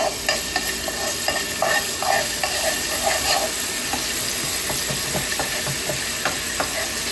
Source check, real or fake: real